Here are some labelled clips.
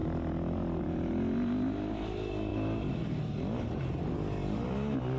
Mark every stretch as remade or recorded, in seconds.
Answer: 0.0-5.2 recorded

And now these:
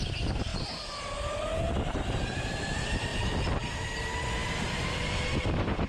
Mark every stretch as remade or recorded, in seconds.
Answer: 0.0-5.9 recorded

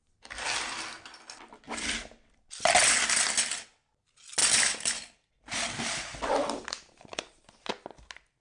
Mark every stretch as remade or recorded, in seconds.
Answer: 0.0-7.1 recorded; 7.1-7.7 remade; 7.7-8.4 recorded

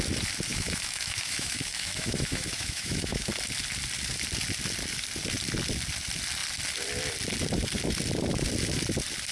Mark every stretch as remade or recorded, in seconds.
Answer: 0.0-0.5 recorded; 0.5-3.3 remade; 3.3-9.3 recorded

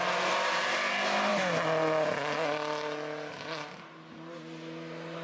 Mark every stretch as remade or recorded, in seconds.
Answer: 0.0-5.2 recorded